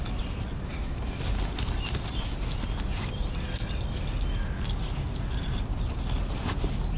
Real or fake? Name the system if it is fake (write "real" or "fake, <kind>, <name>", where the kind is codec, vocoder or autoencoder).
real